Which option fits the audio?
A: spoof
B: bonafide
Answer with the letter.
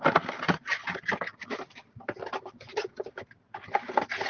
B